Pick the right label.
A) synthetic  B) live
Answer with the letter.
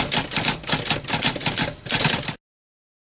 B